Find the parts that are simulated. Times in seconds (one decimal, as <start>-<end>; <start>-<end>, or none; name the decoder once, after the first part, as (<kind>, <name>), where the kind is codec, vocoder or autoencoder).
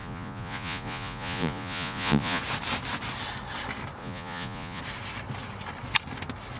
0.0-2.4 (vocoder, Vocos); 4.0-4.8